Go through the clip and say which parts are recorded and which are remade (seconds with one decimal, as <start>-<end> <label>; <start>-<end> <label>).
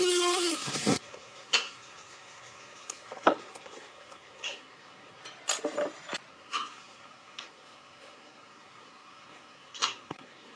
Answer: 0.0-5.2 remade; 5.2-6.3 recorded; 6.3-10.6 remade